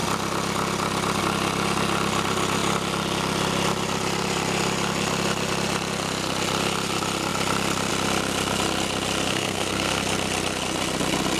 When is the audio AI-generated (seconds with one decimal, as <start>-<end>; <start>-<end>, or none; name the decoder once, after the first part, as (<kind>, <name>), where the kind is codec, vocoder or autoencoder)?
9.3-10.0 (codec, SNAC)